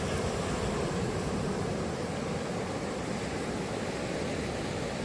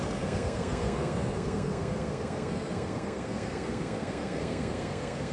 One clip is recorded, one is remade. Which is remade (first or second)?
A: second